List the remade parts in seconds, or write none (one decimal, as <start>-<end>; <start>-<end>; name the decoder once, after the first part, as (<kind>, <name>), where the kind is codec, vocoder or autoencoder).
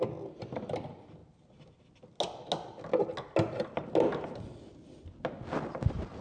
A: none